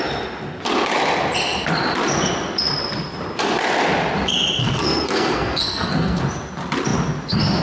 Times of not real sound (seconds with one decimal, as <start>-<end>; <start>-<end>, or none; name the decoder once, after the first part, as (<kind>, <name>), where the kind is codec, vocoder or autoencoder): 4.6-6.2 (codec, SNAC)

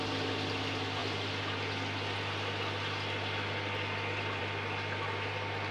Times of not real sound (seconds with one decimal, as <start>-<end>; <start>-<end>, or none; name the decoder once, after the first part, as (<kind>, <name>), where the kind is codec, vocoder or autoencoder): none